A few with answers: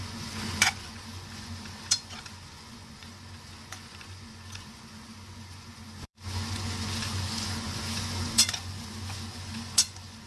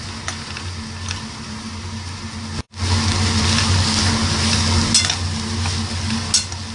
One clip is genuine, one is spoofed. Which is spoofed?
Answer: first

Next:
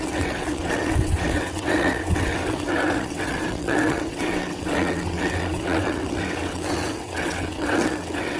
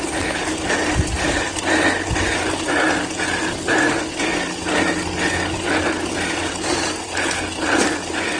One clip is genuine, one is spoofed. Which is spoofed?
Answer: first